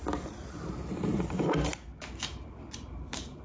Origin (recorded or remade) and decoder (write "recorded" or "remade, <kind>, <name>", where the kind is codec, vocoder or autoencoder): remade, vocoder, BigVGAN v2